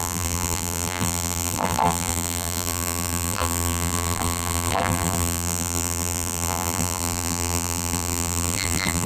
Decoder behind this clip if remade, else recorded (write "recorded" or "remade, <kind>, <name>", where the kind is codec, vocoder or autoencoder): remade, vocoder, BigVGAN v2